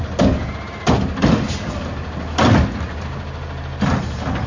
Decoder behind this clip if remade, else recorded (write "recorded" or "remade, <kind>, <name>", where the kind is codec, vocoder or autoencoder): recorded